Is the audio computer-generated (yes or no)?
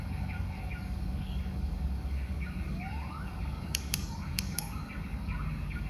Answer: yes